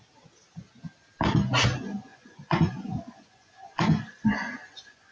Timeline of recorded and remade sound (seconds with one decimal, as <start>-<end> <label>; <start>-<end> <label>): 0.0-2.1 recorded; 2.1-5.1 remade